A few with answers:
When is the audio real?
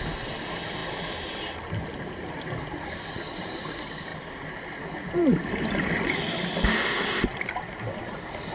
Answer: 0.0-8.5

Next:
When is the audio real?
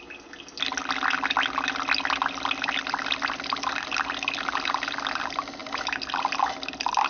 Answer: 0.0-7.1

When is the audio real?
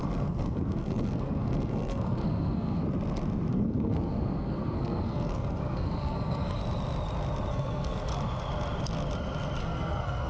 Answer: 2.8-3.5; 6.6-7.5; 8.1-9.6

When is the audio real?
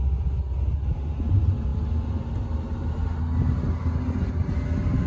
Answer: 0.0-5.1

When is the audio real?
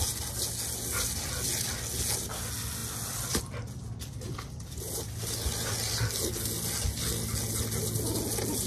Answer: 0.0-8.7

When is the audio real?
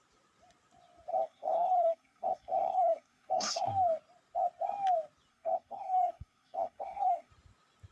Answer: 0.0-1.1; 3.7-5.3; 7.3-7.9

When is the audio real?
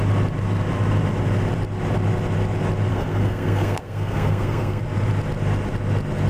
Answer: 0.0-2.9; 4.8-6.3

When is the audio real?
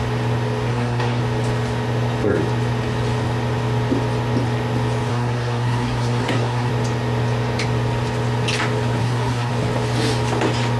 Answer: 0.0-0.7; 1.2-5.1; 6.7-9.0; 9.5-10.8